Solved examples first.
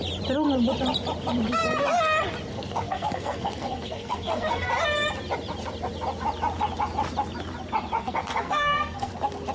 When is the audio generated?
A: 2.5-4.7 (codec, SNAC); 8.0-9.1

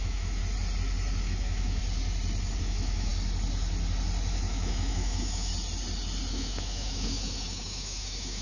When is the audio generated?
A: 0.0-0.4 (autoencoder, DAC-VAE); 1.2-1.8; 2.6-3.1; 4.3-5.5; 6.3-8.4

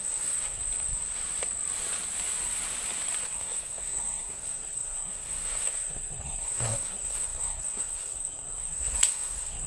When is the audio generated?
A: 0.0-0.6 (codec, SNAC); 3.2-9.7

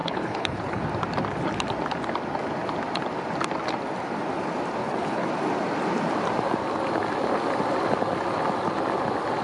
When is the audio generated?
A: 0.0-0.8 (codec, HILCodec); 4.8-5.3